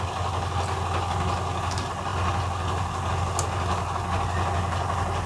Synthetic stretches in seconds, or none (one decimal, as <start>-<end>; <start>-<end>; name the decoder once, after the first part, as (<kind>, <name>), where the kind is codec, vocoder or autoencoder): none